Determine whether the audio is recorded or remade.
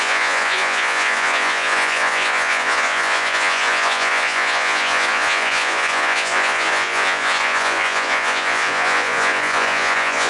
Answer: remade